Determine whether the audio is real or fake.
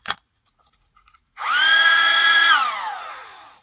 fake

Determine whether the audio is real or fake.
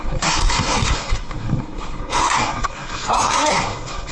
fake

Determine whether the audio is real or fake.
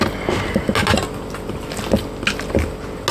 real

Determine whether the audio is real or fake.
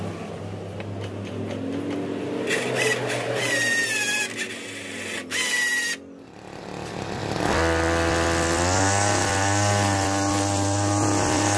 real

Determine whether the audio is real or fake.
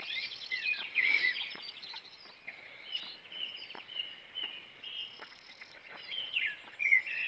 fake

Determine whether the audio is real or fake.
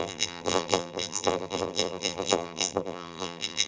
fake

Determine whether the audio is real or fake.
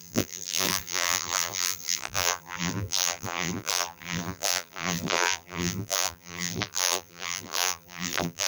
fake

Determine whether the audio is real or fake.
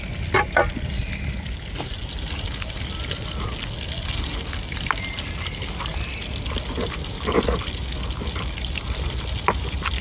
real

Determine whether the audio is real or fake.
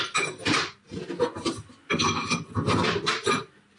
real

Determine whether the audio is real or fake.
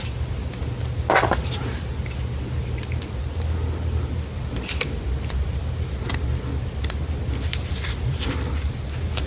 real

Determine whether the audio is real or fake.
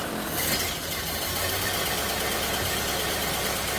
real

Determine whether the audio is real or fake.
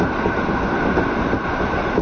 real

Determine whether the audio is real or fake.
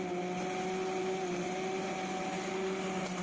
real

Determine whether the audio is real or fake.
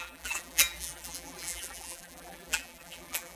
fake